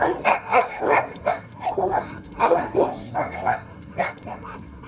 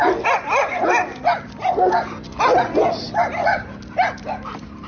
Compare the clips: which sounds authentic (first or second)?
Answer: second